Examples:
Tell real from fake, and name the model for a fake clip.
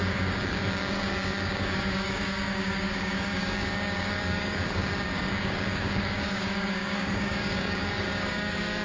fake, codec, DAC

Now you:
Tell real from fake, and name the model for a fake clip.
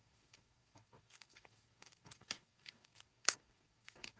fake, codec, DAC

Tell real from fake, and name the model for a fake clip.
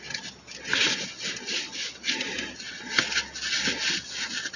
real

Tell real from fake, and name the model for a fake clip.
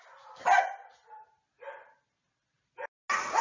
real